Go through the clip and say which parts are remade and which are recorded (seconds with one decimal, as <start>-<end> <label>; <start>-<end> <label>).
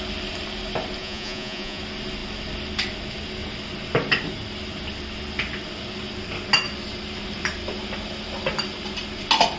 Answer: 0.0-1.0 recorded; 1.0-1.8 remade; 1.8-9.6 recorded